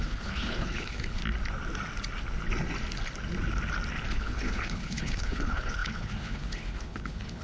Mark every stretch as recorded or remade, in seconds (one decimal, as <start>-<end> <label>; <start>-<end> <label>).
0.0-1.2 remade; 1.2-4.1 recorded; 4.1-7.4 remade